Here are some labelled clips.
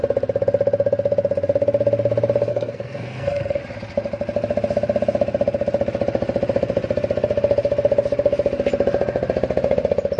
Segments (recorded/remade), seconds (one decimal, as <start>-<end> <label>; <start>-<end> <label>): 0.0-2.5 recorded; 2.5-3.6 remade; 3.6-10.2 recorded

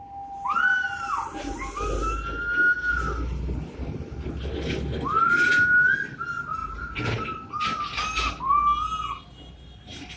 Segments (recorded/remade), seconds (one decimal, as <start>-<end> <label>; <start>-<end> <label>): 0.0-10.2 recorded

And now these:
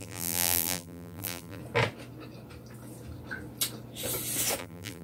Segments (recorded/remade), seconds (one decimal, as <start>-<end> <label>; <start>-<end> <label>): 0.0-1.6 remade; 1.6-4.6 recorded; 4.6-5.0 remade

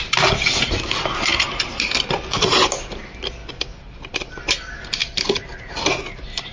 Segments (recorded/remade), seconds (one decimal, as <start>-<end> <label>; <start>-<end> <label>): 0.0-6.5 recorded

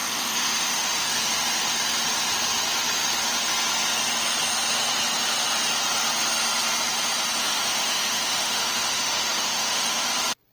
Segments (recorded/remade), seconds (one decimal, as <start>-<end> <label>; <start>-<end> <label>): 0.0-1.1 remade; 1.1-7.4 recorded; 7.4-10.1 remade; 10.1-10.5 recorded

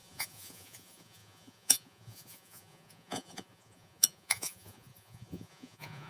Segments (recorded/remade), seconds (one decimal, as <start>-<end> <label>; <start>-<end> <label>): 0.0-6.1 remade